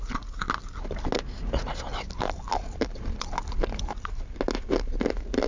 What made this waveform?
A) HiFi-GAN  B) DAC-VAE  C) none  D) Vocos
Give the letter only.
C